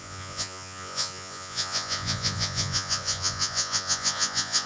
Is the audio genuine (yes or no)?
no